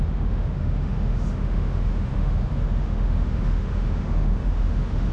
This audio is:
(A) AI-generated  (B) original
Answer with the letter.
A